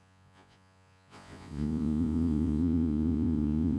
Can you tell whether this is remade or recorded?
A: remade